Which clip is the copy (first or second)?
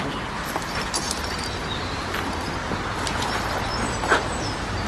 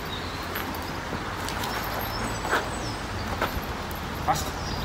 first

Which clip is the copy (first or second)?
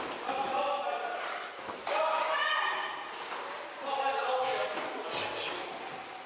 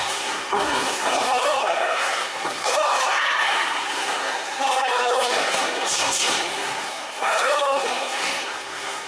second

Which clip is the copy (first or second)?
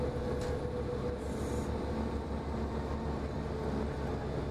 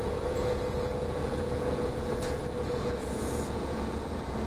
second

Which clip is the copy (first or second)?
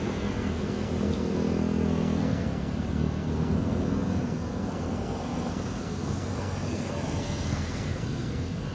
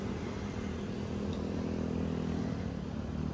first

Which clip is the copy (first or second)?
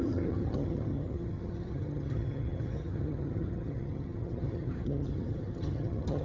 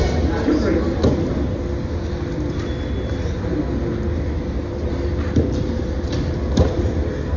first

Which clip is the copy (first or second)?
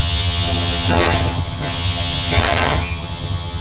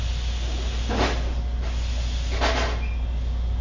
first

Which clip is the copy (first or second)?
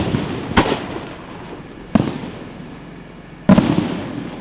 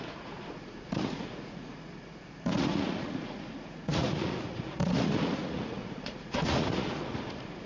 second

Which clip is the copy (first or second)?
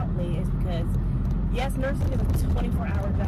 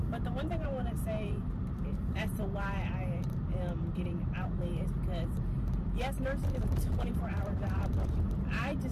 second